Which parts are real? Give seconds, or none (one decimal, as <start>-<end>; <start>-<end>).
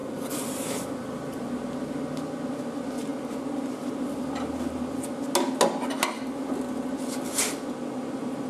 1.6-8.5